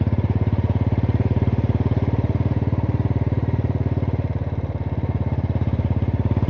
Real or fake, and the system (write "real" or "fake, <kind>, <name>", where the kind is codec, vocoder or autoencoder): fake, vocoder, BigVGAN v2